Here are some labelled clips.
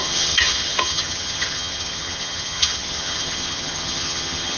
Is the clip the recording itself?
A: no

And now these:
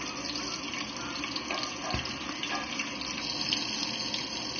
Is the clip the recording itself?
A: yes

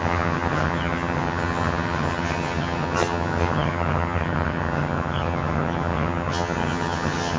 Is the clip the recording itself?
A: no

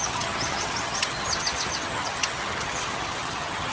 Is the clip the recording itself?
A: no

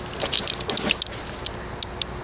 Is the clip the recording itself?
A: yes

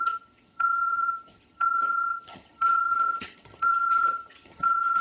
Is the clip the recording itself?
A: no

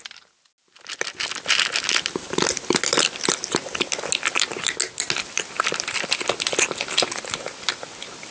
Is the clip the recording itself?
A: yes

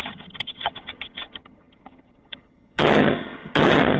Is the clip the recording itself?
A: no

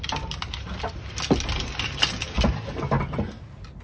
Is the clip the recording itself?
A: yes